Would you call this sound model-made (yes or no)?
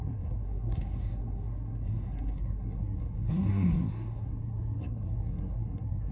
yes